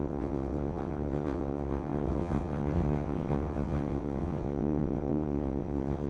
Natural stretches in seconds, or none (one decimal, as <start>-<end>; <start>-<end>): none